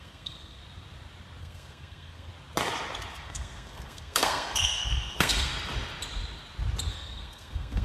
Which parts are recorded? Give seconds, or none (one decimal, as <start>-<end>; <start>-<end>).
0.6-1.4; 2.3-3.1; 5.5-6.9